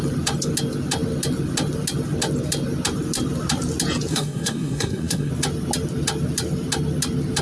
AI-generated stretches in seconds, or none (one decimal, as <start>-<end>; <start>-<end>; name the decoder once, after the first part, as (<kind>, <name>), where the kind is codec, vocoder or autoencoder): 4.1-5.3 (codec, SNAC)